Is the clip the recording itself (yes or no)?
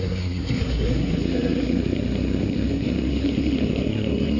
no